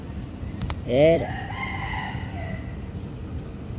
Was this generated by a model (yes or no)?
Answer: yes